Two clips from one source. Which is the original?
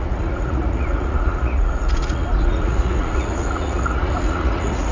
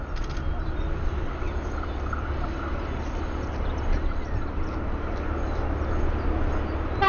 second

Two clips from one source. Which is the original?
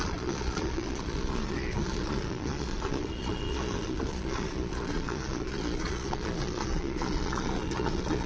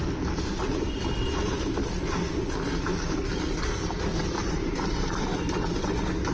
second